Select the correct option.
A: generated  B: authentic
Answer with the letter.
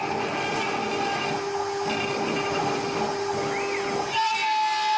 B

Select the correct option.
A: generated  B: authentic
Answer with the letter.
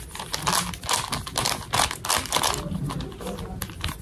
B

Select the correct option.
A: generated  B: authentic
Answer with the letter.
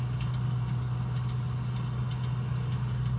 B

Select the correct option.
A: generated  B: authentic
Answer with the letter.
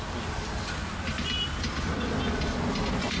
B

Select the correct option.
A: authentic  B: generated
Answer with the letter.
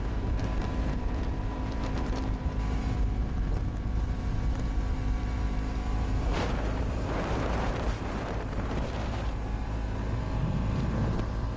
B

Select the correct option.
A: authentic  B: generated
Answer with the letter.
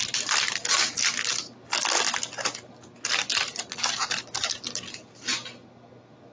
A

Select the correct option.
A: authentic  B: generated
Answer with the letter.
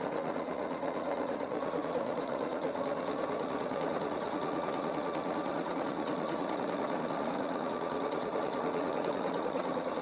B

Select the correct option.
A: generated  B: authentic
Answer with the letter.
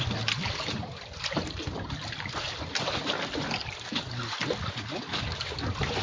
B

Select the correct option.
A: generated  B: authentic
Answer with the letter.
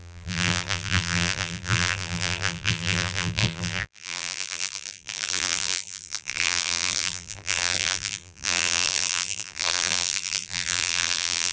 A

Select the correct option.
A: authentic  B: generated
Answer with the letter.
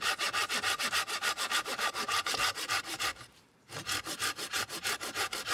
B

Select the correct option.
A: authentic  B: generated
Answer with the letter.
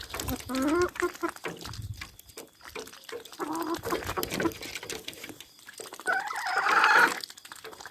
A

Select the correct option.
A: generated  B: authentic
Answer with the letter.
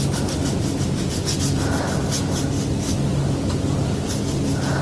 B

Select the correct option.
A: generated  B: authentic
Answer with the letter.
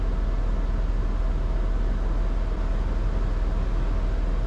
B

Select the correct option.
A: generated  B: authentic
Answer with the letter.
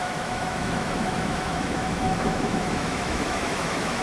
A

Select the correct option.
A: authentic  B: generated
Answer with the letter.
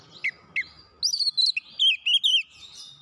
A